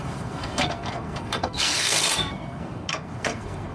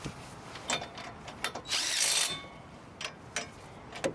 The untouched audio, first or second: second